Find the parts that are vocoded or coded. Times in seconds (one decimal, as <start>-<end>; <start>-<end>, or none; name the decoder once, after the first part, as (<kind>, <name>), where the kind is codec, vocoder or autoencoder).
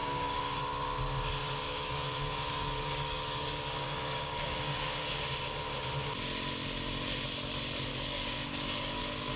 0.0-0.6 (codec, DAC); 1.4-5.1; 7.9-9.0